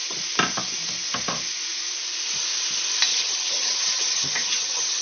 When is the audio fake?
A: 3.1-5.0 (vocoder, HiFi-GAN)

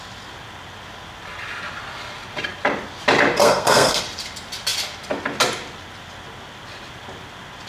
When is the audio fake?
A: 3.4-4.0 (codec, SNAC)

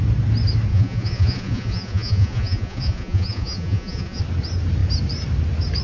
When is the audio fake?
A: 0.7-4.2 (vocoder, Vocos)